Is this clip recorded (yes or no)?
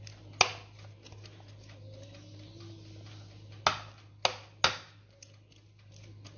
yes